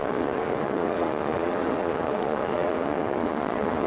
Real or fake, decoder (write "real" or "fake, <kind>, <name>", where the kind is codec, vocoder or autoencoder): fake, vocoder, Vocos